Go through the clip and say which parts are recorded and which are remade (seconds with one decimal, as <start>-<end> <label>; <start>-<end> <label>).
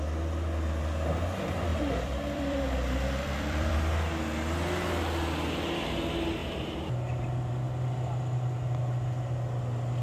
0.0-1.7 recorded; 1.7-3.7 remade; 3.7-10.0 recorded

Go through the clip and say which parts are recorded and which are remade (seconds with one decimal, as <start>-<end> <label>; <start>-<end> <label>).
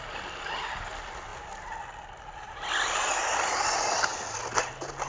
0.0-5.1 recorded